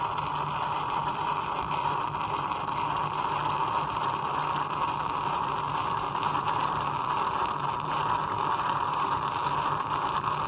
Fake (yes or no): no